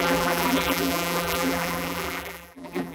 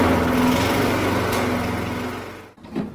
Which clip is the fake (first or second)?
first